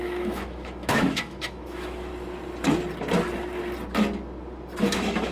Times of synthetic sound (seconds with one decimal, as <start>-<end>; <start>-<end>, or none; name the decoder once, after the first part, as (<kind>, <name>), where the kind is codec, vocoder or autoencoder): 0.0-2.1 (autoencoder, DAC-VAE); 4.8-5.3